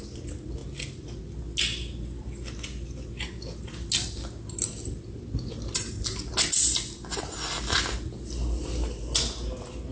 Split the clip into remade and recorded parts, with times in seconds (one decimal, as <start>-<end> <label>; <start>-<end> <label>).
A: 0.0-9.9 recorded